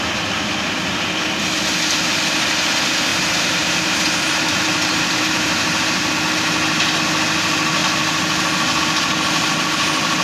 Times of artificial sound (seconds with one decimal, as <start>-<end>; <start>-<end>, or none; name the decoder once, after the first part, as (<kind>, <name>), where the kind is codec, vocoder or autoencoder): 3.1-6.1 (vocoder, BigVGAN v2)